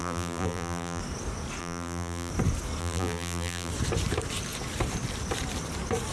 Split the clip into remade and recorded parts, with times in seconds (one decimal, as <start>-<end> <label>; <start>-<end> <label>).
0.0-1.0 remade; 1.0-1.6 recorded; 1.6-2.3 remade; 2.3-2.8 recorded; 2.8-3.7 remade; 3.7-6.1 recorded